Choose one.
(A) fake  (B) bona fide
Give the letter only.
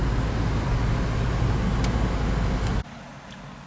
B